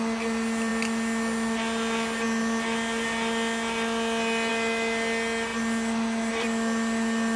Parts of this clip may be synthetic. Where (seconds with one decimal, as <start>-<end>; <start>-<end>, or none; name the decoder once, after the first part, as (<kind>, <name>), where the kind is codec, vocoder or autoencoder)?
none